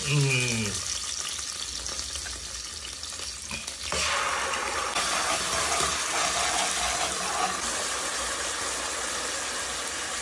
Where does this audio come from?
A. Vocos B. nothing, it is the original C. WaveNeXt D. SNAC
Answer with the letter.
B